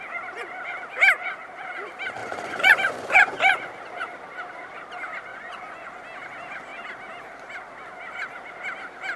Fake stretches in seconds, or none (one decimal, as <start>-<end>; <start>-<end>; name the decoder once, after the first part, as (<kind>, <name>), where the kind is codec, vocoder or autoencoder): 2.2-3.7 (vocoder, Vocos); 5.3-5.9